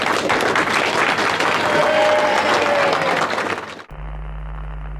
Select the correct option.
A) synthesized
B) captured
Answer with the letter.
B